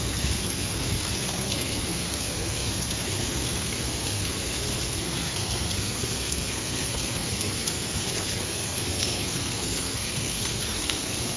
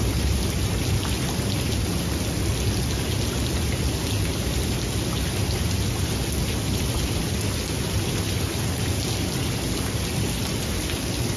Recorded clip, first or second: second